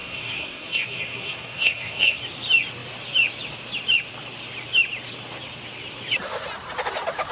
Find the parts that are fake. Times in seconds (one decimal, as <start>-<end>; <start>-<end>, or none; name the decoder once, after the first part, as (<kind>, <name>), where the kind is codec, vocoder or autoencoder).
0.0-2.2 (codec, SNAC)